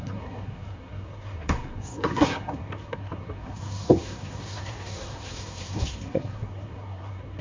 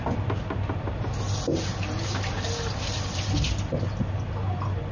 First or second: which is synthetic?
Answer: first